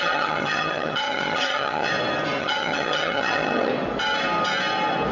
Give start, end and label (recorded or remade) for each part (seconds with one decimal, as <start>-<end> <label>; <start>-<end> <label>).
0.0-1.9 remade; 1.9-2.4 recorded; 2.4-3.7 remade; 3.7-5.1 recorded